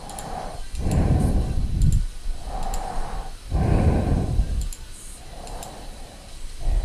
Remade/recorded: recorded